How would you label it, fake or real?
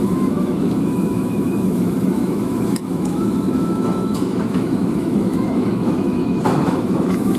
fake